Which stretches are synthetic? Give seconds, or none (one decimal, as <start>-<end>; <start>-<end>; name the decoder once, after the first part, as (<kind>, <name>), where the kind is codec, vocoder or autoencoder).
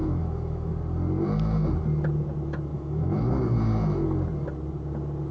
0.0-0.7 (autoencoder, DAC-VAE); 2.7-3.4